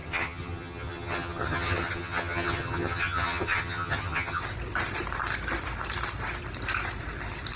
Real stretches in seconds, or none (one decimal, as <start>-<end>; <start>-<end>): 4.4-7.6